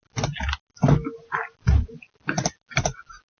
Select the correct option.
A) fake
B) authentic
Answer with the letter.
B